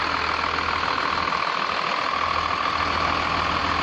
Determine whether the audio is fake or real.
real